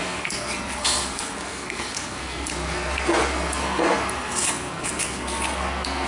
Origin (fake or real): fake